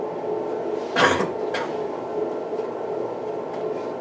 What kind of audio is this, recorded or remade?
remade